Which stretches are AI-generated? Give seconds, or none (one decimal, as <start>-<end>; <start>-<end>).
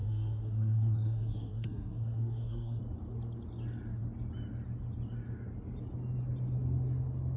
0.0-2.8